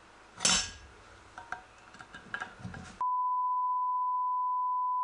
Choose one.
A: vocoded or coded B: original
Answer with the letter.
B